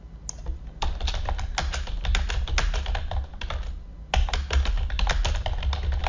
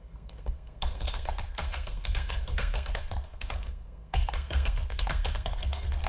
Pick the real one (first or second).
first